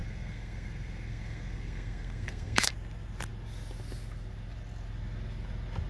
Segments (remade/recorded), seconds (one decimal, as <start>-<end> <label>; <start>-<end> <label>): 0.0-2.7 remade; 2.7-5.9 recorded